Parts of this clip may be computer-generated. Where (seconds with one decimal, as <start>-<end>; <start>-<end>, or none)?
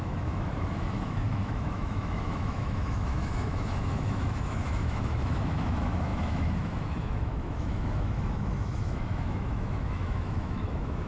0.0-11.1